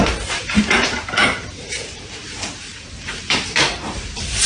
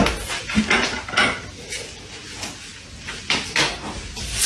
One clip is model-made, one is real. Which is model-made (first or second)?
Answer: first